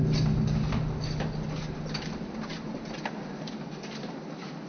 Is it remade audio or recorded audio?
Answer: recorded